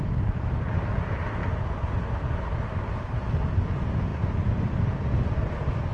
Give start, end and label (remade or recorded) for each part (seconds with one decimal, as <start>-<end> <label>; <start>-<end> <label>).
0.0-5.9 recorded